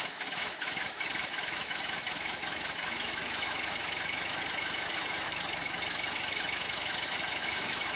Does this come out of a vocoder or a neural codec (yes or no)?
yes